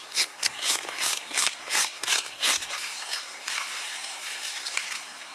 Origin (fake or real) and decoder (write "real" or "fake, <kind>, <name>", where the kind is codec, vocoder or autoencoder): fake, codec, SNAC